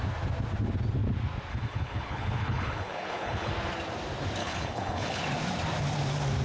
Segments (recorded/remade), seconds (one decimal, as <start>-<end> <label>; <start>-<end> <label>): 0.0-1.5 recorded; 1.5-3.5 remade; 3.5-4.4 recorded; 4.4-5.2 remade; 5.2-6.4 recorded

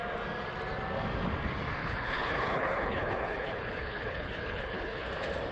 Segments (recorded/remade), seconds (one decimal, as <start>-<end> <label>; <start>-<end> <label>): 0.0-1.8 recorded; 1.8-5.1 remade; 5.1-5.5 recorded

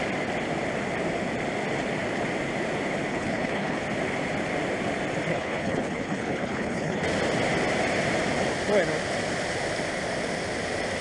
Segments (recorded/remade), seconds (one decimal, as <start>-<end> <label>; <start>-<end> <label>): 0.0-3.1 recorded; 3.1-3.8 remade; 3.8-5.3 recorded; 5.3-7.0 remade; 7.0-11.0 recorded

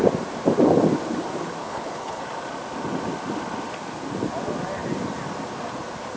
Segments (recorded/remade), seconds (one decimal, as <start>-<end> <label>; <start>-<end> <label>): 0.0-1.6 recorded; 1.6-2.2 remade; 2.2-6.2 recorded

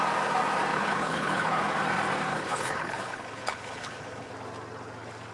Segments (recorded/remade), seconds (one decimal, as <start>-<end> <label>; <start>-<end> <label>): 0.0-0.7 recorded; 0.7-1.6 remade; 1.6-2.3 recorded; 2.3-4.3 remade; 4.3-5.3 recorded

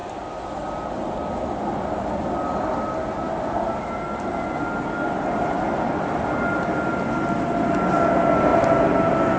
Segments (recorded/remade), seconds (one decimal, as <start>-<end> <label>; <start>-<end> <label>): 0.0-9.4 recorded

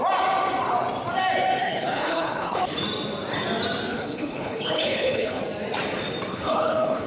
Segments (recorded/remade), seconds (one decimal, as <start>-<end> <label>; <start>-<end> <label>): 0.0-1.6 recorded; 1.6-2.6 remade; 2.6-3.9 recorded; 3.9-5.4 remade; 5.4-6.3 recorded; 6.3-7.1 remade

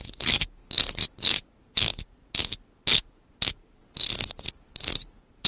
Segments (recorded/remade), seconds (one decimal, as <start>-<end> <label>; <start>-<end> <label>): 0.0-5.5 recorded